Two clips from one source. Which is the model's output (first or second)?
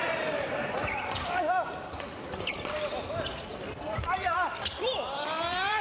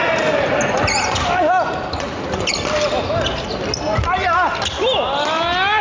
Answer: first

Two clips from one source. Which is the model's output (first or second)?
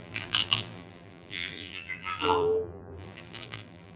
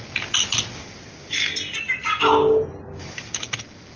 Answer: first